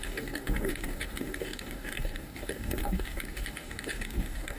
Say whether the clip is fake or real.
fake